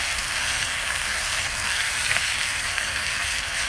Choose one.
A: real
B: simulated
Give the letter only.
B